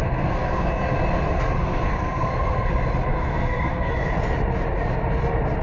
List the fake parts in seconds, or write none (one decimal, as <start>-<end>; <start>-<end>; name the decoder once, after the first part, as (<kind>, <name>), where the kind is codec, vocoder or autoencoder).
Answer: 0.0-0.7 (codec, SNAC); 1.6-2.7; 3.1-3.9